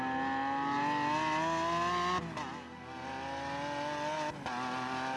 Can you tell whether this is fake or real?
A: real